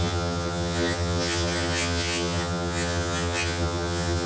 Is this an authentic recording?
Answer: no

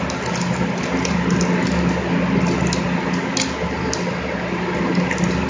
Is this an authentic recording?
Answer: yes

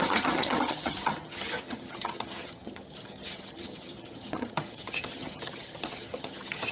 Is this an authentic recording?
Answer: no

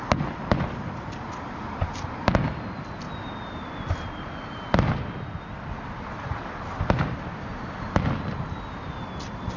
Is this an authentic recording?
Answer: yes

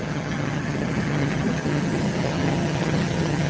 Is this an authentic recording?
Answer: no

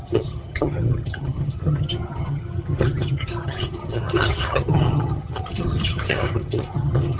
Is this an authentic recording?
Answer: no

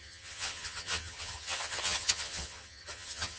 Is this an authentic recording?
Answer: no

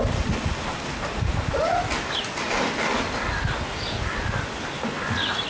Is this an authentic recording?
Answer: yes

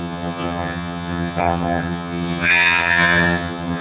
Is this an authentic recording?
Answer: no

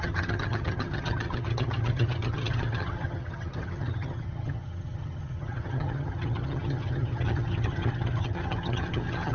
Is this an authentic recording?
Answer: no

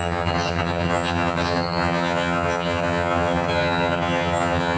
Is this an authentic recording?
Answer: no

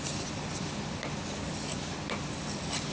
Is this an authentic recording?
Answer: yes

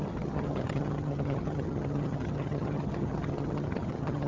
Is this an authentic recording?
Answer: no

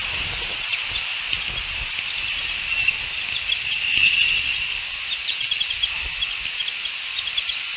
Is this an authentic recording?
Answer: yes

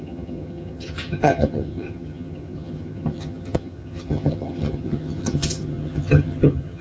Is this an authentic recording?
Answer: no